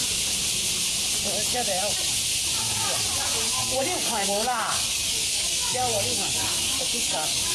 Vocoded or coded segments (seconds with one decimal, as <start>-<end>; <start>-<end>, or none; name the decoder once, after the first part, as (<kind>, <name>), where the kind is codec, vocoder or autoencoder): 3.8-7.5 (codec, DAC)